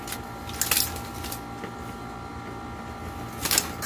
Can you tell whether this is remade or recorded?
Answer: recorded